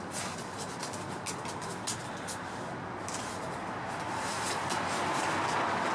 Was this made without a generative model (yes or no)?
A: yes